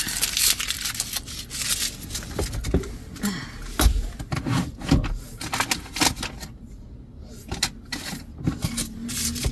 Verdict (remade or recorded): recorded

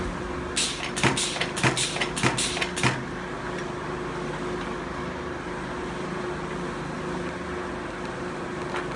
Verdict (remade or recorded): recorded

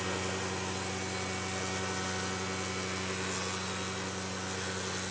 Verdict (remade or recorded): recorded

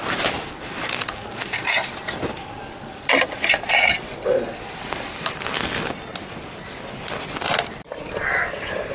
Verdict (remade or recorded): recorded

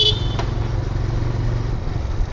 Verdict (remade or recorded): recorded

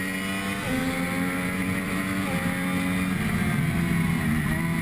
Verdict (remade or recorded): recorded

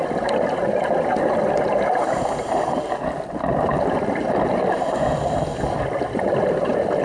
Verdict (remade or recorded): recorded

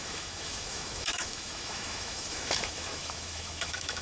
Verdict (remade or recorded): remade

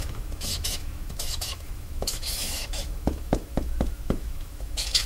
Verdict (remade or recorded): remade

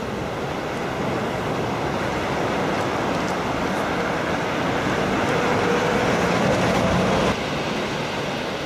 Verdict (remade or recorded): recorded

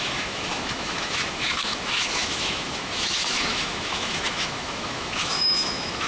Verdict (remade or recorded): remade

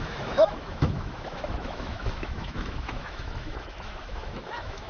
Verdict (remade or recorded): remade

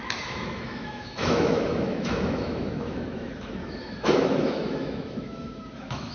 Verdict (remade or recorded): remade